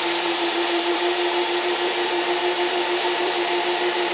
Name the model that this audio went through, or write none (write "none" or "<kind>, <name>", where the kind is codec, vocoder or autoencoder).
vocoder, BigVGAN v2